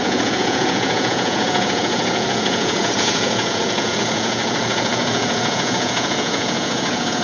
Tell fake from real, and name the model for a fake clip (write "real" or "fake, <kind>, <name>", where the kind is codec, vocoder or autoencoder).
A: fake, vocoder, Vocos